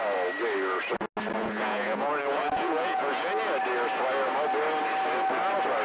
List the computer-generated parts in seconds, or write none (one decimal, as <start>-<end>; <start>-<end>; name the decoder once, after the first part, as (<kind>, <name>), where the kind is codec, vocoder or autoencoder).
1.4-3.3 (vocoder, Vocos)